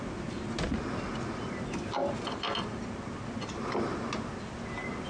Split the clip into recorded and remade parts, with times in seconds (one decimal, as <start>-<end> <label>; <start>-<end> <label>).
0.0-5.1 recorded